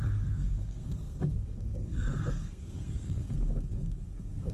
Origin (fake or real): fake